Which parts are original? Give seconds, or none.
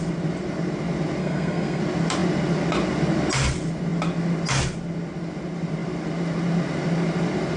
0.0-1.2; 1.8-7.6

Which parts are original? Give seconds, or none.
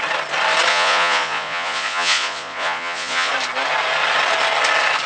0.0-0.7; 3.3-5.1